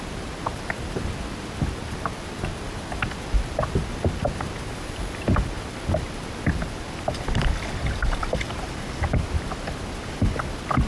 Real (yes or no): yes